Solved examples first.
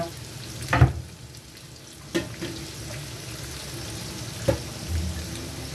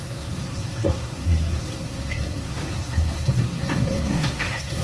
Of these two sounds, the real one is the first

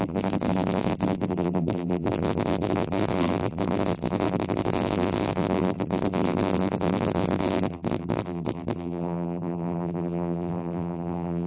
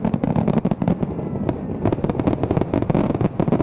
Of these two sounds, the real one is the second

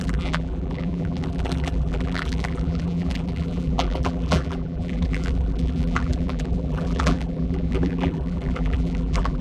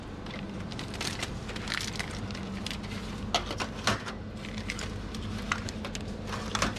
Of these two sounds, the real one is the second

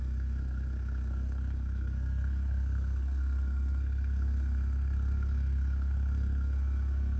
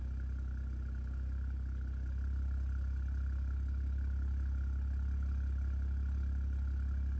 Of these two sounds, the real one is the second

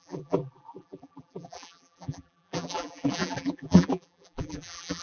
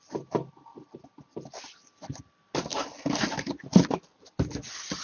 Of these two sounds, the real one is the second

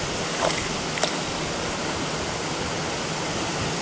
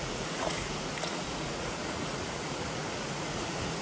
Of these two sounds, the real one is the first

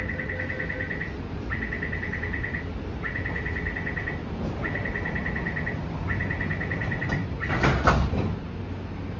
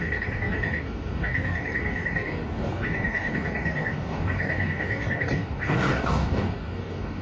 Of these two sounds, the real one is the first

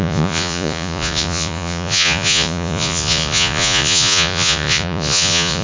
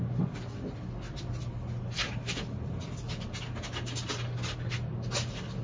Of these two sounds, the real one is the second